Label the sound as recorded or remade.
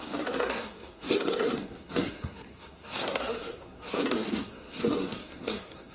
remade